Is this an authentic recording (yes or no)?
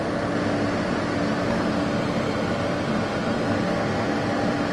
yes